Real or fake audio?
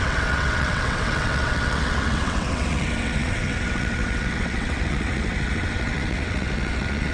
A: fake